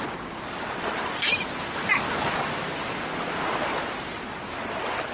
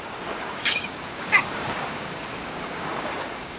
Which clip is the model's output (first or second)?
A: second